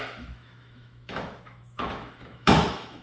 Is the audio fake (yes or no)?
yes